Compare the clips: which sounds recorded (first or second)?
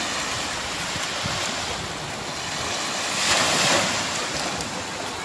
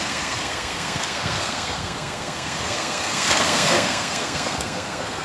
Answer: first